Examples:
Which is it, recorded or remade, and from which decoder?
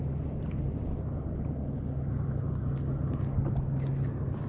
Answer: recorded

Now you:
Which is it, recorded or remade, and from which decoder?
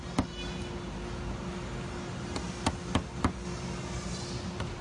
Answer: recorded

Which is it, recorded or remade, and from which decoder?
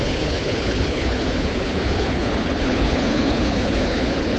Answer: remade, codec, HILCodec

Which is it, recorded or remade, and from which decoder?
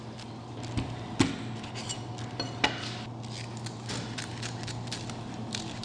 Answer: recorded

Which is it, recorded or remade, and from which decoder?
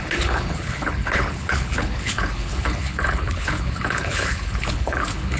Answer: remade, codec, HILCodec